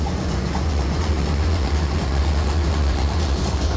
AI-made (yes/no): yes